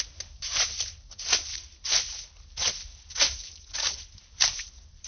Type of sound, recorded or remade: recorded